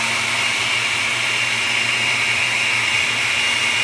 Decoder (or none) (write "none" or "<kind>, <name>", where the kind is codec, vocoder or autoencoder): none